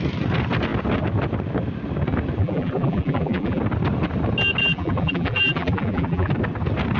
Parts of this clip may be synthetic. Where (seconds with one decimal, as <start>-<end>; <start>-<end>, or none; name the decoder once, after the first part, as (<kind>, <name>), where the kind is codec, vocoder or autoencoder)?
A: 2.4-3.6 (vocoder, BigVGAN v2); 4.6-6.3